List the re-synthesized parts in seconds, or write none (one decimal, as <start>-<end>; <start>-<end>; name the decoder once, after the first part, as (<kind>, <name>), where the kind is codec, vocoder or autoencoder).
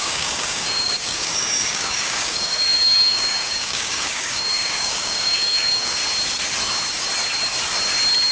0.0-6.0 (codec, DAC)